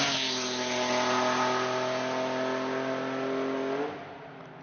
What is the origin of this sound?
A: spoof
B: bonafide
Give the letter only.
B